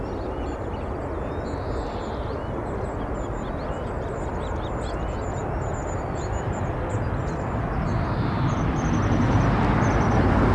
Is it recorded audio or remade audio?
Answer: recorded